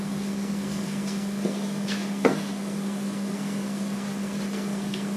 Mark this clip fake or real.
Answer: fake